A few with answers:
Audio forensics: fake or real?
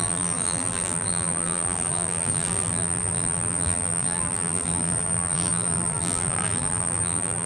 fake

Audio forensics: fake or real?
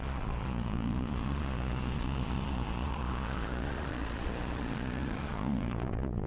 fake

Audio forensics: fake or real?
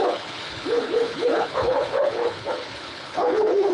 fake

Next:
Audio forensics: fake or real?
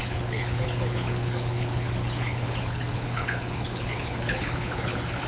fake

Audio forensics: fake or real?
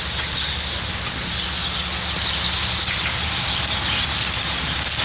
real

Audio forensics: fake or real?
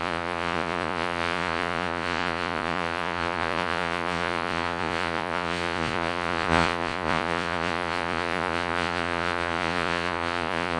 fake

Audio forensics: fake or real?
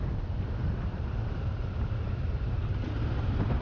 real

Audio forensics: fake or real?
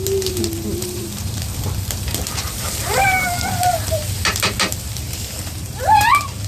fake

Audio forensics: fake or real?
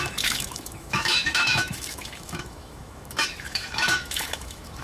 fake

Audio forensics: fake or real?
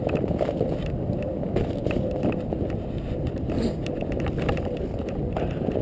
fake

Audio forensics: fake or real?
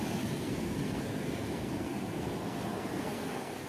fake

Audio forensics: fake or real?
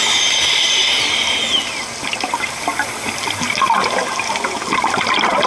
real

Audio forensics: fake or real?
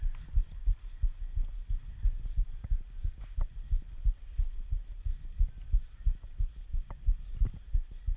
real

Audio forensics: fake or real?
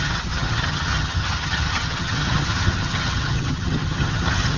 fake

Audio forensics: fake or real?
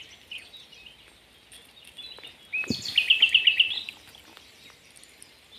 real